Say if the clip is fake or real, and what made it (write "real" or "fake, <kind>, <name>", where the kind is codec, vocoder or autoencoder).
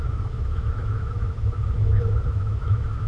fake, autoencoder, DAC-VAE